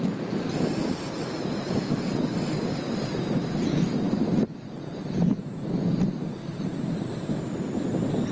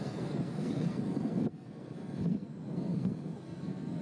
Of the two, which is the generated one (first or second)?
second